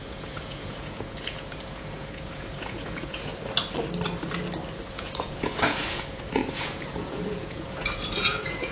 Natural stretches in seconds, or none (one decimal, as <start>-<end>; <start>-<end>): 3.3-4.9